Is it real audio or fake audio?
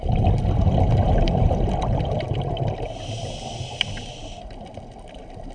real